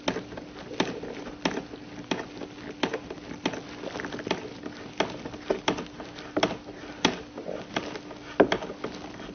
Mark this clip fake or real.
real